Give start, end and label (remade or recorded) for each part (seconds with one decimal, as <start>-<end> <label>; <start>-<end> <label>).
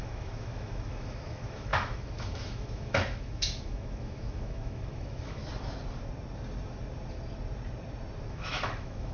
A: 0.0-5.4 remade; 5.4-8.3 recorded; 8.3-9.1 remade